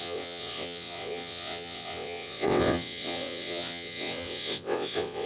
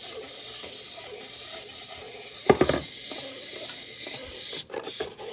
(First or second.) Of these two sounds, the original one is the second